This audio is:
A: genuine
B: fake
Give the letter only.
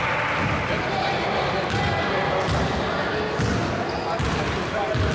A